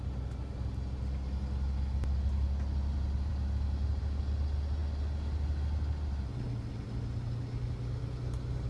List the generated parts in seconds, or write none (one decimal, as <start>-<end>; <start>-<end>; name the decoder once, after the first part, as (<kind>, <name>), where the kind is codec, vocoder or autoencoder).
none